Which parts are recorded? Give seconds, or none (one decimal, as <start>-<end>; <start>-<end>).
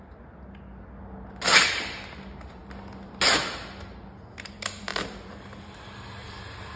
0.0-6.8